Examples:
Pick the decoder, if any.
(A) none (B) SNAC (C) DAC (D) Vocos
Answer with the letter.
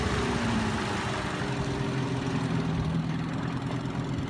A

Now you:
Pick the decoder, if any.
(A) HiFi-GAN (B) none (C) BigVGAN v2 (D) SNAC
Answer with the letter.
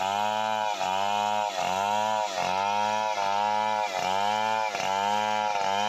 B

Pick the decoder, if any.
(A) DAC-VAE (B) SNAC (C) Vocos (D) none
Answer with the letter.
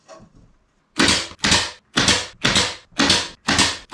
D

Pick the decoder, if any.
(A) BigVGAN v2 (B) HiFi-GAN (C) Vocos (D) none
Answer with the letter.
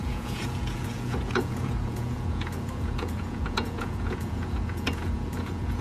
C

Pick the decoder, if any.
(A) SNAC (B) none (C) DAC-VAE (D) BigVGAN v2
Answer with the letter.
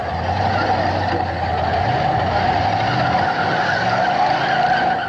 B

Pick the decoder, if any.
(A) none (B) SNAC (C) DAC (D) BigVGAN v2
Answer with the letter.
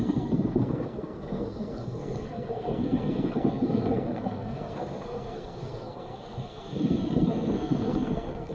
B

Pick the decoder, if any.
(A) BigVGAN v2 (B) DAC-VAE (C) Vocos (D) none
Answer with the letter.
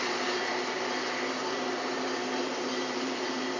A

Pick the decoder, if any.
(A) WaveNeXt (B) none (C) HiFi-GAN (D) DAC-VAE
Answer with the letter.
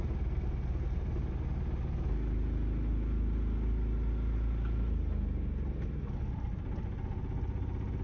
B